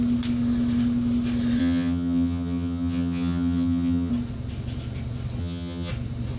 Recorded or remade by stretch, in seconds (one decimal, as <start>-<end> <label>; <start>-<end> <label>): 0.0-1.6 recorded; 1.6-4.1 remade; 4.1-5.4 recorded; 5.4-5.9 remade; 5.9-6.4 recorded